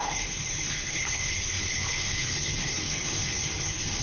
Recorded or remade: remade